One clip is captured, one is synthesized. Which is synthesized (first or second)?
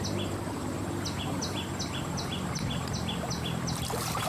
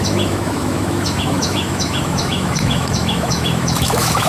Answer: second